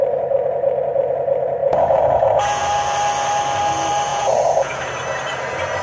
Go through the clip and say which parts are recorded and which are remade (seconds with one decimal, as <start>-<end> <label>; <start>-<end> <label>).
0.0-1.6 recorded; 1.6-2.6 remade; 2.6-4.1 recorded; 4.1-4.8 remade; 4.8-5.8 recorded